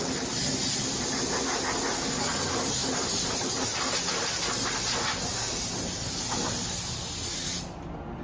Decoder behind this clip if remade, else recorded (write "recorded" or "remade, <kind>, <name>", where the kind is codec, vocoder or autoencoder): recorded